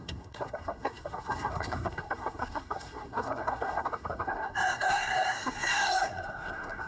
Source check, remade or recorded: remade